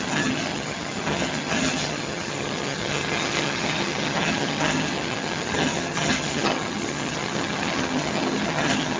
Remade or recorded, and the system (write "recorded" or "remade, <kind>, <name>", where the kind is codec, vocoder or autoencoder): remade, vocoder, HiFi-GAN